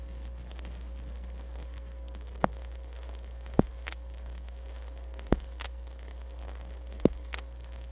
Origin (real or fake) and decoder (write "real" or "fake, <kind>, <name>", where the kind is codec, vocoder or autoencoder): fake, codec, SNAC